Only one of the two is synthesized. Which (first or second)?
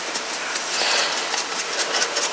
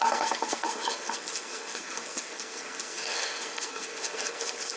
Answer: second